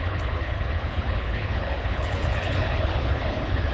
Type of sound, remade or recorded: remade